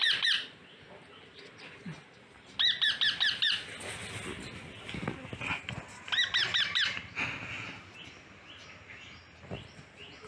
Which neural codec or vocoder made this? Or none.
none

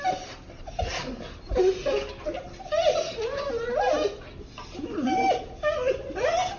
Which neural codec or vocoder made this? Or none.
none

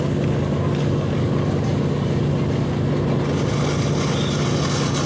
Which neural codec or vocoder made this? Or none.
none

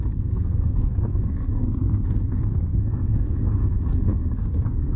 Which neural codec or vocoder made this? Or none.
codec, SNAC